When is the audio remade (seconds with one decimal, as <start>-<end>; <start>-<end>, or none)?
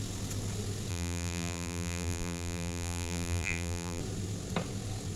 0.9-4.0